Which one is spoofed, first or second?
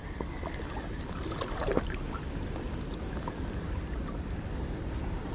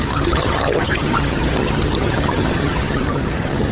second